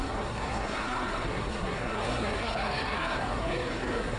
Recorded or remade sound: remade